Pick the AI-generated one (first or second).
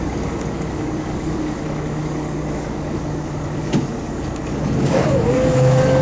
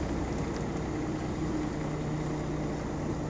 first